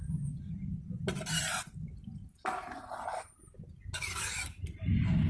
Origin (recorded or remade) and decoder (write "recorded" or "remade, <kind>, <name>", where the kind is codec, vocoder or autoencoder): recorded